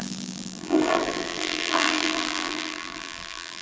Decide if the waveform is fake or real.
fake